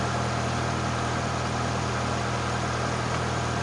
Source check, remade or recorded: remade